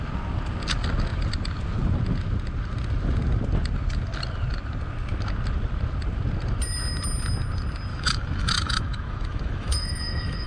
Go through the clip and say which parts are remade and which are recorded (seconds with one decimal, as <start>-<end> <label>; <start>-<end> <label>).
0.0-7.9 recorded; 7.9-10.5 remade